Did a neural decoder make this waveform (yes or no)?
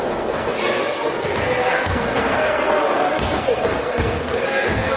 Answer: yes